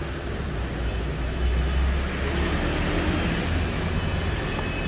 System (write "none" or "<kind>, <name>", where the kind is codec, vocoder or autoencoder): none